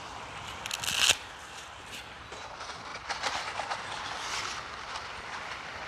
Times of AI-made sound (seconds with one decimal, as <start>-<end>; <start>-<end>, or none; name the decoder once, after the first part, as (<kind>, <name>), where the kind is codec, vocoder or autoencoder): 2.9-4.0 (vocoder, BigVGAN v2)